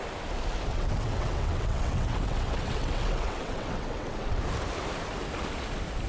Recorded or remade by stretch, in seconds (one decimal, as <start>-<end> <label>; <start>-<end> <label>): 0.0-0.7 recorded; 0.7-4.4 remade; 4.4-6.1 recorded